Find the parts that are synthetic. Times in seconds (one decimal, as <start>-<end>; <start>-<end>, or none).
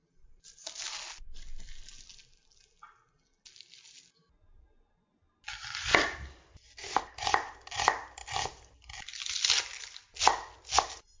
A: none